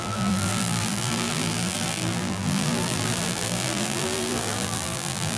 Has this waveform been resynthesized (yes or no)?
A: yes